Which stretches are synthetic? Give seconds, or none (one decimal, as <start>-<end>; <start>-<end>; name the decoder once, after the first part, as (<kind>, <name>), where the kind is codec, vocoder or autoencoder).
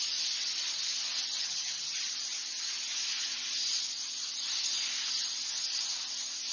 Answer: 1.4-2.1 (vocoder, HiFi-GAN)